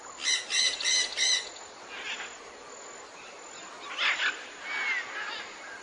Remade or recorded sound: recorded